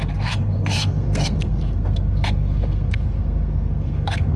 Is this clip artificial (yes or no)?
yes